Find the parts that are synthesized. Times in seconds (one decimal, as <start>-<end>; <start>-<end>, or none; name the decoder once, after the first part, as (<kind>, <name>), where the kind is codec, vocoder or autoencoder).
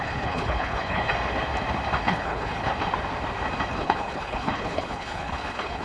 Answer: 0.0-1.1 (codec, HILCodec); 2.0-2.7; 3.7-5.8